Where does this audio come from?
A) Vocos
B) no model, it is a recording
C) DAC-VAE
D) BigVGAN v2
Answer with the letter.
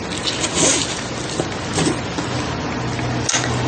B